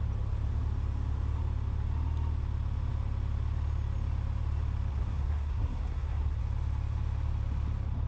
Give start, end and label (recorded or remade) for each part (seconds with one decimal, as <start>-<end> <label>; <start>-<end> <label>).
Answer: 0.0-4.9 recorded; 4.9-6.4 remade; 6.4-8.1 recorded